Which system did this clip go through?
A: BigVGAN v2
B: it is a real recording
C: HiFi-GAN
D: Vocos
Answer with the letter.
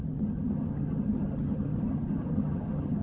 C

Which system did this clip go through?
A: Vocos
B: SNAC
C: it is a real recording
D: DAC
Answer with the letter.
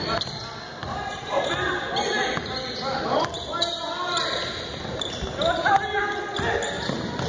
C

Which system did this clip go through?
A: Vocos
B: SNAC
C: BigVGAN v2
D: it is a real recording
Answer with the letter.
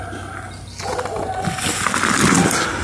D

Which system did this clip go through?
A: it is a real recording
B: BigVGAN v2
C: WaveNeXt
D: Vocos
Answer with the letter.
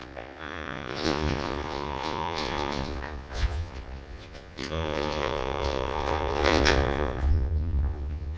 D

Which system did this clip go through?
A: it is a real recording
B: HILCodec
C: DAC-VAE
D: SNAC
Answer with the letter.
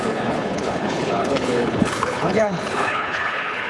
B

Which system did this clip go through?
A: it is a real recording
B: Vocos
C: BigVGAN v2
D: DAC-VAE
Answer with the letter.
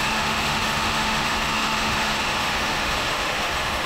D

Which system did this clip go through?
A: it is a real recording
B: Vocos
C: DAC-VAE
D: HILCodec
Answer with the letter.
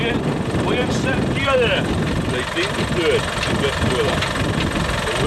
A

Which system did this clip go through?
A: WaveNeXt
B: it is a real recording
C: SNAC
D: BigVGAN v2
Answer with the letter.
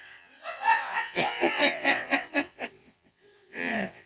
A